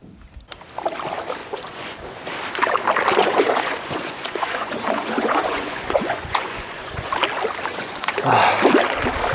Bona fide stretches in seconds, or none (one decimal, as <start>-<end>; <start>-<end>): 0.0-1.4; 2.0-3.2; 7.1-7.7; 8.5-9.3